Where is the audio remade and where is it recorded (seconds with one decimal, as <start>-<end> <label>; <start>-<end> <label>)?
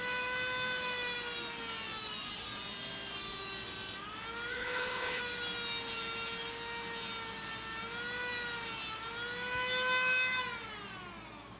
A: 0.0-4.5 recorded; 4.5-5.2 remade; 5.2-11.6 recorded